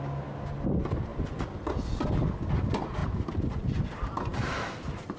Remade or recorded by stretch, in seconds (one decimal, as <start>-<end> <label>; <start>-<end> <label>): 0.0-5.2 recorded